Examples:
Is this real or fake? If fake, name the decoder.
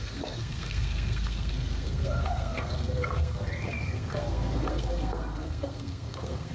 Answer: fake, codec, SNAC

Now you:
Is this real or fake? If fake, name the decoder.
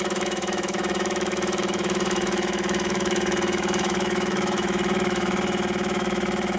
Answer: fake, autoencoder, DAC-VAE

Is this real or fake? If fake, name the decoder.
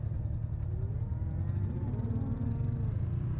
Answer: real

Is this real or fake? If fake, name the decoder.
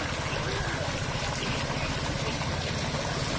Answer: real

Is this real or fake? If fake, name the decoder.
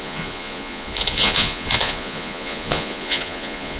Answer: fake, vocoder, Vocos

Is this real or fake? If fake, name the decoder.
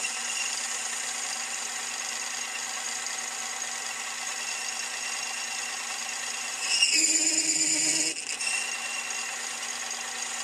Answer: real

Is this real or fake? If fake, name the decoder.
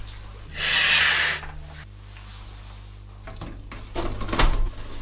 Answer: real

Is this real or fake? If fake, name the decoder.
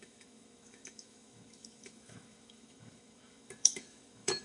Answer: fake, autoencoder, DAC-VAE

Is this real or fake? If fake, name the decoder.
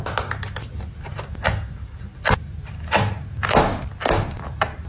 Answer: real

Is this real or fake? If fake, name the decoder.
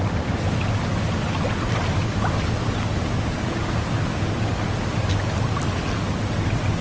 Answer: real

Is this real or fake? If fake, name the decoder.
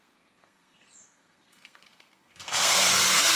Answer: fake, codec, SNAC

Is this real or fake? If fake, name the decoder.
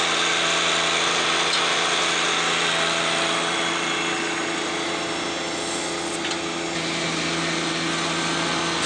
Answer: real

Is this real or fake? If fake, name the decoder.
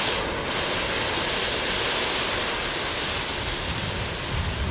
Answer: real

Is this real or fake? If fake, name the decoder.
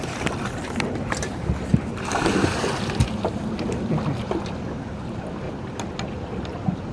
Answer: fake, vocoder, BigVGAN v2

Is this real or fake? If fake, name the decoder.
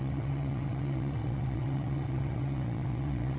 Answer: fake, vocoder, WaveNeXt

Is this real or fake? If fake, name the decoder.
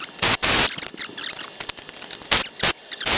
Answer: real